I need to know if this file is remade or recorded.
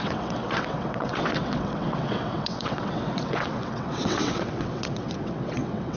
remade